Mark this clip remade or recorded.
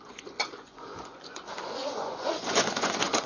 remade